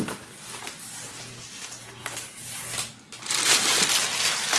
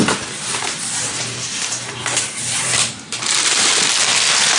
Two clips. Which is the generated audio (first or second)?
second